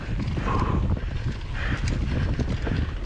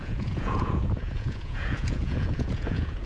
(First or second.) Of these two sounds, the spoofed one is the second